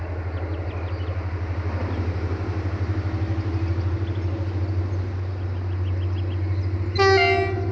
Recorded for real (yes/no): yes